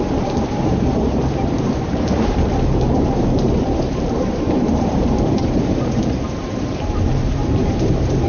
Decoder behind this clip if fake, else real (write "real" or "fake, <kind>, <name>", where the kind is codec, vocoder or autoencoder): fake, vocoder, BigVGAN v2